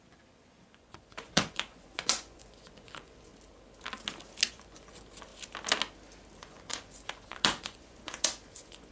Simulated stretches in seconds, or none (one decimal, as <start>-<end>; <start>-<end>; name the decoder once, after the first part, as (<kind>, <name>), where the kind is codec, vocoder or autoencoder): 0.0-3.3 (vocoder, Vocos); 4.5-5.3; 6.4-8.9